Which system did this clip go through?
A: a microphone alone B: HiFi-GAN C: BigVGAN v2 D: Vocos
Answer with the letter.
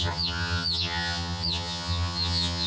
B